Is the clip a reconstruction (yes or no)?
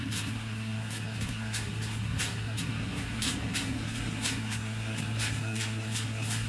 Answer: yes